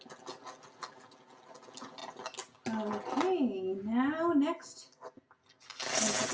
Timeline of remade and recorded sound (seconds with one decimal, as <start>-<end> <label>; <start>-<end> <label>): 0.0-6.3 recorded